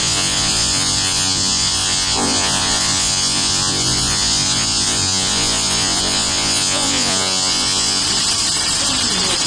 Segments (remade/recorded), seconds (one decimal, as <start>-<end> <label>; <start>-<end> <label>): 0.0-8.0 remade; 8.0-9.5 recorded